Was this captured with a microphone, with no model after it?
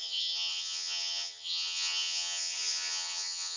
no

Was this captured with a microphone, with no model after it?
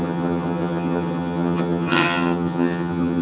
no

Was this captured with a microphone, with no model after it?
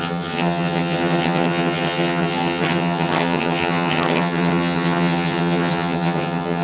no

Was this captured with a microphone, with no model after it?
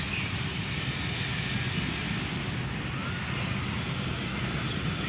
yes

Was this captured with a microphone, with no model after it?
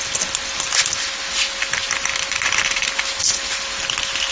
yes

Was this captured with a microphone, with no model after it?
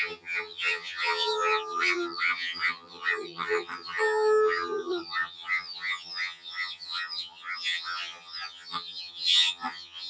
no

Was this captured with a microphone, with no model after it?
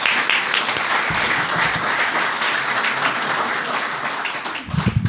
yes